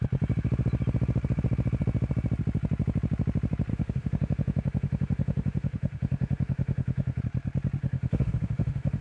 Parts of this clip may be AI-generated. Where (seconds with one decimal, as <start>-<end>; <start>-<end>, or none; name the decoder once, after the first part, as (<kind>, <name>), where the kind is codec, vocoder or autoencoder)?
3.7-7.2 (autoencoder, DAC-VAE); 7.8-9.0